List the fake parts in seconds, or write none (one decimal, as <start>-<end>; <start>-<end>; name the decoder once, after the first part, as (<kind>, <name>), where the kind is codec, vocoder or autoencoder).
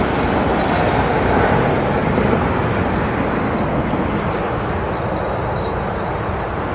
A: none